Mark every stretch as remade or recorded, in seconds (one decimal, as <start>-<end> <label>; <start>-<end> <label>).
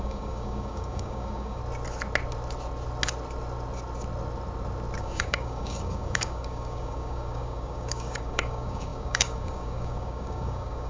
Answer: 0.0-1.6 remade; 1.6-5.0 recorded; 5.0-10.9 remade